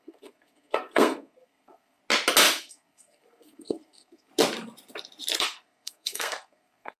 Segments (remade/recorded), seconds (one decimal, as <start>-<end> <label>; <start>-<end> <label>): 0.0-2.0 remade; 2.0-2.6 recorded; 2.6-4.3 remade; 4.3-5.4 recorded; 5.4-7.0 remade